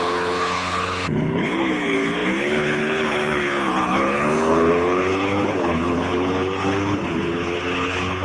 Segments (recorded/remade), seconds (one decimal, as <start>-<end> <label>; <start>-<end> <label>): 0.0-8.2 remade